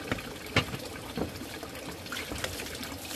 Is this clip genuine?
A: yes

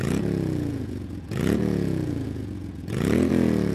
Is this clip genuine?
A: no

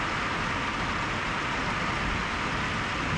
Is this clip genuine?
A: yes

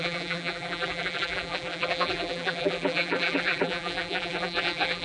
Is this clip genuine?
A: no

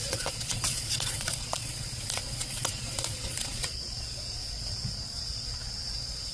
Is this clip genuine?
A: no